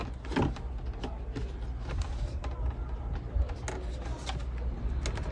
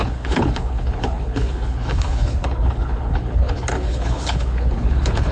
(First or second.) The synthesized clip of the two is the second